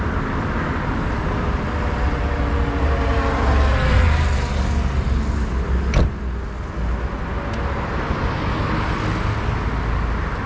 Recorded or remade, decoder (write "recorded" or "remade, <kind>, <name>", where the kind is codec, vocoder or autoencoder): recorded